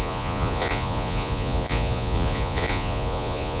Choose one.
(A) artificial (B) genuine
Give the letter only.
A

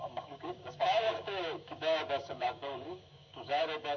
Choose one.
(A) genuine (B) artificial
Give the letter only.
B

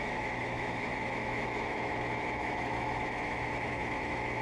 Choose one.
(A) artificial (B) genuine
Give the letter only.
A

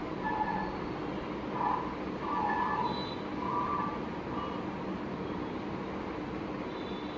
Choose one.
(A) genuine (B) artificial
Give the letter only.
A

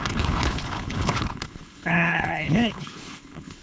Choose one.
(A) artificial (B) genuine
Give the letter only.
A